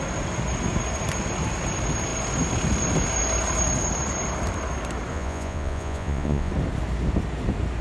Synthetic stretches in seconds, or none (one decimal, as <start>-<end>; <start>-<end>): 5.1-6.5